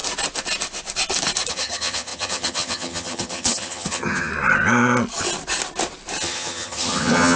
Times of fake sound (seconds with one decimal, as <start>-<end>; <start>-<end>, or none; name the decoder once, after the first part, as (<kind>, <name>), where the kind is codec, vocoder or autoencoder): 1.5-4.3 (vocoder, HiFi-GAN); 6.2-7.4